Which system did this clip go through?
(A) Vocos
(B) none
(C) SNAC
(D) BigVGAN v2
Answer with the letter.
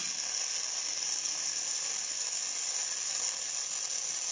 B